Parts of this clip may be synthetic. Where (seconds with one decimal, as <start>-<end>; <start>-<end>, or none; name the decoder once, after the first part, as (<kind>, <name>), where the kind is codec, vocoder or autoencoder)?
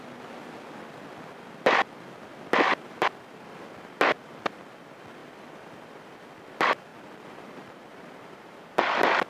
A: 6.9-8.7 (vocoder, BigVGAN v2)